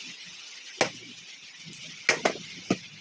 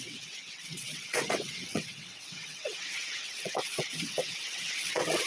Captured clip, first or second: first